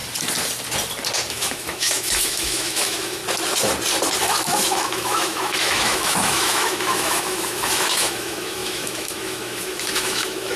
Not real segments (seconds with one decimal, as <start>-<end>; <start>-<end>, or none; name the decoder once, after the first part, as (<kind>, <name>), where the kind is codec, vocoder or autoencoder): 1.3-3.2 (autoencoder, DAC-VAE); 4.2-10.6